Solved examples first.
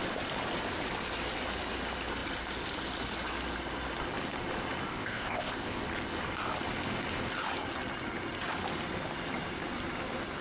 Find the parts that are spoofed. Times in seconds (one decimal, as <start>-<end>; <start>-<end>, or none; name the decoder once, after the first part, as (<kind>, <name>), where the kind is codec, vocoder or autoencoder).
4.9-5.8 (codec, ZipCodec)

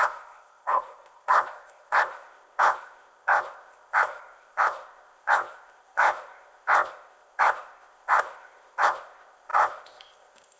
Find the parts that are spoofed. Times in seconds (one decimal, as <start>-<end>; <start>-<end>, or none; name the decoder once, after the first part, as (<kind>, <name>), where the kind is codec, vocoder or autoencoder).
0.0-10.6 (codec, ZipCodec)

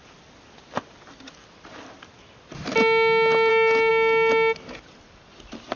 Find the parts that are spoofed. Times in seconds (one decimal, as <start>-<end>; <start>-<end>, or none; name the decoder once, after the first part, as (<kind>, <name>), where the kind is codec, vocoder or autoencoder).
none

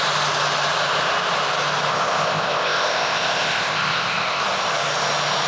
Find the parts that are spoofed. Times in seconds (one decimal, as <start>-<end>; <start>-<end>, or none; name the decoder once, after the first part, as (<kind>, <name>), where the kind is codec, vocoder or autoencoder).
1.9-4.4 (codec, ZipCodec)